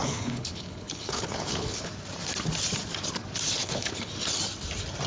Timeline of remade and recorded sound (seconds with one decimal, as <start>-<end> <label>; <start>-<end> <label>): 0.0-1.9 remade; 1.9-3.6 recorded; 3.6-4.1 remade; 4.1-5.1 recorded